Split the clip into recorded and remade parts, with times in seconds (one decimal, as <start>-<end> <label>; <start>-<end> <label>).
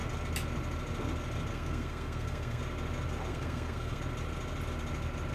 0.0-1.5 recorded; 1.5-2.6 remade; 2.6-3.3 recorded; 3.3-4.0 remade; 4.0-5.3 recorded